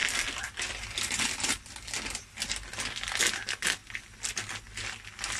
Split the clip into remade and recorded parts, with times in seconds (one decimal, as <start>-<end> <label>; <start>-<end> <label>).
0.0-5.4 recorded